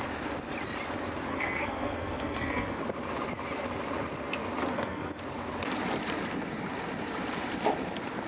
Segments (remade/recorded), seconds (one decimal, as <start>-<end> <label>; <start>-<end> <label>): 0.0-1.3 recorded; 1.3-2.8 remade; 2.8-4.7 recorded; 4.7-5.2 remade; 5.2-8.3 recorded